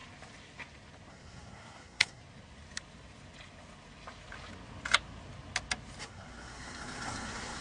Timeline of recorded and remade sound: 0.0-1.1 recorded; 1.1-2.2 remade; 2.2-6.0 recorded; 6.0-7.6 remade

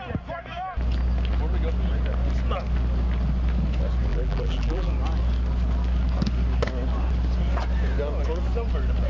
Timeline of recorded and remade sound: 0.0-4.1 recorded; 4.1-4.9 remade; 4.9-9.1 recorded

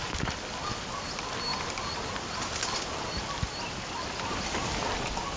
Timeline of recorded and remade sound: 0.0-5.4 recorded

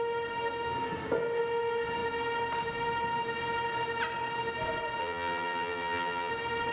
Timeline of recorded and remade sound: 0.0-5.0 recorded; 5.0-6.3 remade; 6.3-6.7 recorded

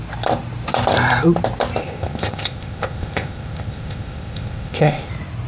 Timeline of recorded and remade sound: 0.0-1.8 recorded; 1.8-5.1 remade; 5.1-5.5 recorded

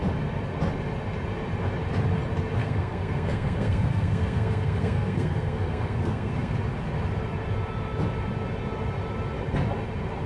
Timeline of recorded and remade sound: 0.0-2.6 recorded; 2.6-6.5 remade; 6.5-10.3 recorded